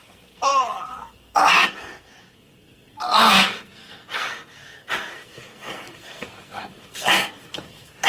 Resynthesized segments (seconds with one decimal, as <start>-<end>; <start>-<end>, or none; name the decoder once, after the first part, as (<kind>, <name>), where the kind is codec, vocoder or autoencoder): 0.0-8.1 (codec, SNAC)